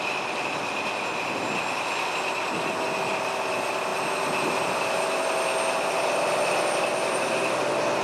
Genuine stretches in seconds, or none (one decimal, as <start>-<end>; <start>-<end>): 0.0-8.0

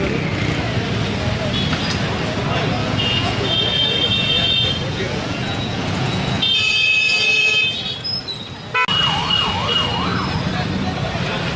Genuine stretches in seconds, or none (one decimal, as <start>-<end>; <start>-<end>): 0.0-2.8; 7.5-11.6

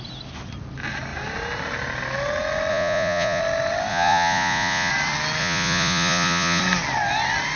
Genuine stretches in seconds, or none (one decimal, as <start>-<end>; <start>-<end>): 0.0-2.7; 3.4-3.9; 4.9-5.4; 6.6-7.6

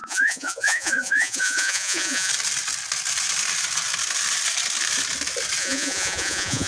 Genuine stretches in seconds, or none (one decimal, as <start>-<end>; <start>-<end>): 2.3-5.6

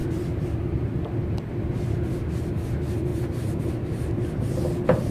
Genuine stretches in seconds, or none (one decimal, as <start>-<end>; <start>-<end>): 0.0-5.1

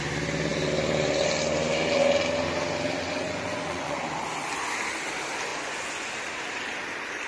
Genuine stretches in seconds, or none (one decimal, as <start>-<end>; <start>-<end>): 0.0-3.2; 4.0-5.5; 6.1-7.3

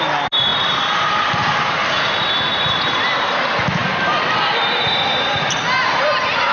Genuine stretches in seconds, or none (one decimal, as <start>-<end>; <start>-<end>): 0.0-6.5